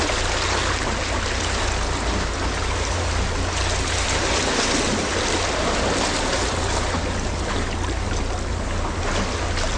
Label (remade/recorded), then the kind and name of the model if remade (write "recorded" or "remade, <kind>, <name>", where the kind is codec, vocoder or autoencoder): recorded